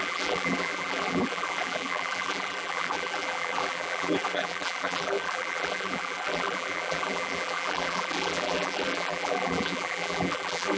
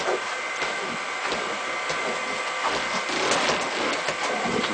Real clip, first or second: second